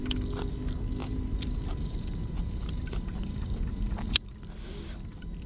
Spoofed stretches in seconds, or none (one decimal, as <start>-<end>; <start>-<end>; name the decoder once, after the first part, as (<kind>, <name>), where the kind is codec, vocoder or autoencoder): 1.0-4.3 (vocoder, BigVGAN v2)